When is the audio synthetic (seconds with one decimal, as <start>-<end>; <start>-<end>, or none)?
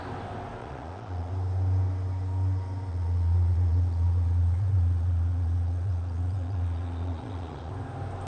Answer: 0.6-1.3; 2.9-7.7